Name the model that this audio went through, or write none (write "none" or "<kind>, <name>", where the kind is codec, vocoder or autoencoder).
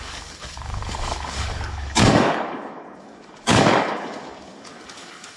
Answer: codec, DAC